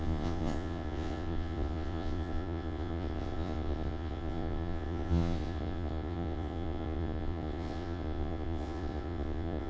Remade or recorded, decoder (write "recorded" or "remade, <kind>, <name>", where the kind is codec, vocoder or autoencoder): remade, vocoder, Vocos